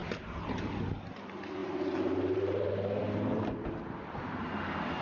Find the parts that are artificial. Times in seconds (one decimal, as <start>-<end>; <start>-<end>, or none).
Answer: 1.6-4.6